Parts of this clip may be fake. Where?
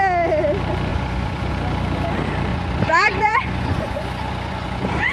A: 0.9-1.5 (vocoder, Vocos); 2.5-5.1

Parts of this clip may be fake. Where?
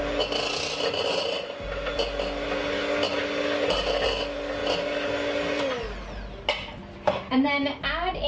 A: none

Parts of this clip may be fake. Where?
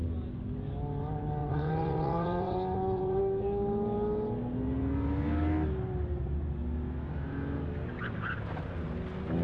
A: 1.4-3.2 (vocoder, Vocos)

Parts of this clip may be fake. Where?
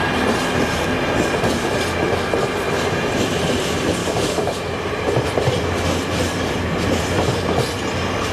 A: 4.0-4.6 (codec, DAC)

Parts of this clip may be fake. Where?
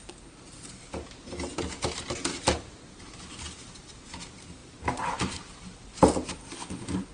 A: 4.6-5.8 (vocoder, BigVGAN v2)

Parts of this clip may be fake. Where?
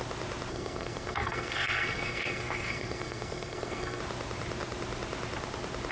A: 0.5-4.0 (codec, SNAC)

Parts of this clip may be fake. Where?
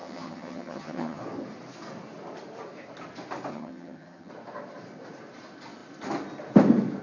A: 0.0-1.2 (vocoder, HiFi-GAN); 3.5-4.3